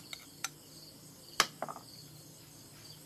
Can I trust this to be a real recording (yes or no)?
yes